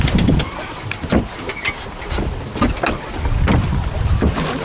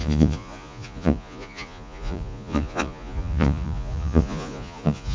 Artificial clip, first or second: second